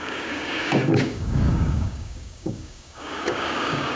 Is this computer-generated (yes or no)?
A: yes